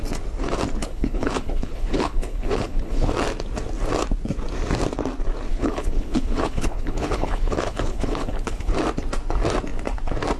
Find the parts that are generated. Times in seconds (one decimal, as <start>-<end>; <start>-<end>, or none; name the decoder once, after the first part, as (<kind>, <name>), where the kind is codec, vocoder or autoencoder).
0.8-3.1 (codec, HILCodec); 5.5-8.7

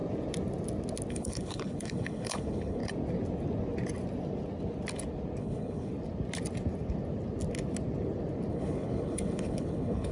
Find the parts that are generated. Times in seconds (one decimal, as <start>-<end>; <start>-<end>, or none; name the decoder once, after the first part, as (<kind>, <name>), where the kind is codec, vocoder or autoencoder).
1.1-2.8 (codec, HILCodec); 5.4-5.9; 8.5-10.1

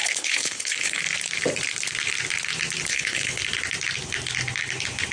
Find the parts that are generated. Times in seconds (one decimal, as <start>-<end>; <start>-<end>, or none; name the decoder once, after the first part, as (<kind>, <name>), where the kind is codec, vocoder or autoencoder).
0.0-1.0 (codec, HILCodec); 2.9-3.4

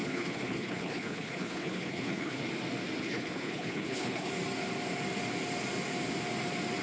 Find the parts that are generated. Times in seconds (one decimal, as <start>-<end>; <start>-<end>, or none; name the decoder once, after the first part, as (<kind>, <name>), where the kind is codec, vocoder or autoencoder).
0.0-2.4 (codec, HILCodec); 3.0-4.3

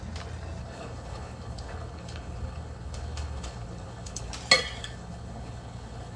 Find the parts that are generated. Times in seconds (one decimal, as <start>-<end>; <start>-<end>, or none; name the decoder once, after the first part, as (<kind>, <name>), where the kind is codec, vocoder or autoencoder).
0.6-4.3 (codec, HILCodec); 4.8-6.2

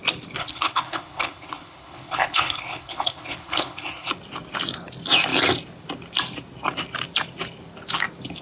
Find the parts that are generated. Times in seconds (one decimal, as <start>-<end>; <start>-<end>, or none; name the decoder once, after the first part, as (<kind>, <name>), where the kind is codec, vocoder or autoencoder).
0.4-4.1 (codec, HILCodec)